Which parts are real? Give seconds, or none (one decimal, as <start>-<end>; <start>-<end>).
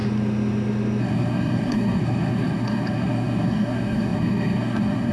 0.0-1.0